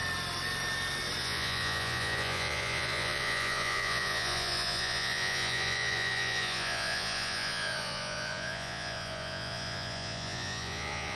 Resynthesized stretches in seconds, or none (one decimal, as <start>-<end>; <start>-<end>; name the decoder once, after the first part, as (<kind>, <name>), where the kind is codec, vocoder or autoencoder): 1.2-11.2 (vocoder, Vocos)